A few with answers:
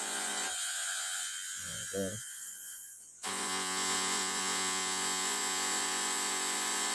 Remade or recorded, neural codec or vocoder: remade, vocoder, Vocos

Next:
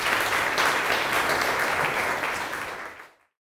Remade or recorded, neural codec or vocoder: recorded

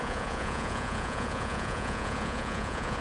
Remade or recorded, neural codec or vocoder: remade, vocoder, Vocos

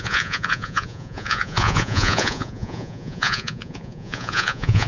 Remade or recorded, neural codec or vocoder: remade, vocoder, Vocos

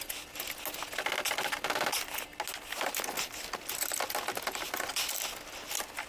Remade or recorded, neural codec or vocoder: recorded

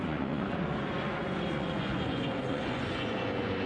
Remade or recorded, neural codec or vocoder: remade, vocoder, Vocos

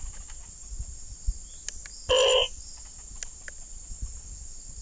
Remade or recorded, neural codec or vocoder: recorded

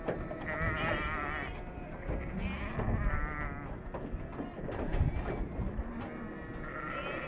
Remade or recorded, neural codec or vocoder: recorded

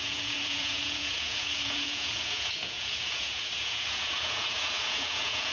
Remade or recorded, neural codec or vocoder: remade, vocoder, Vocos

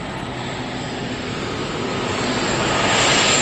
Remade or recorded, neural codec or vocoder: recorded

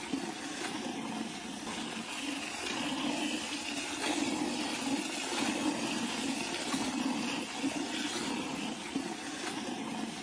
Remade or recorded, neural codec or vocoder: recorded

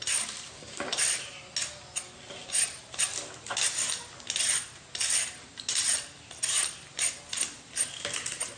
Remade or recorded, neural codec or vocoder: recorded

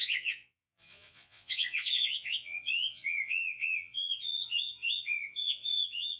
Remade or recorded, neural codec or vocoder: remade, vocoder, Vocos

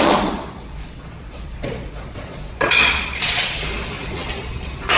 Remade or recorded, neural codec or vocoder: remade, vocoder, Vocos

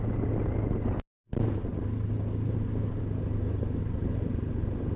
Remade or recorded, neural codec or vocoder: recorded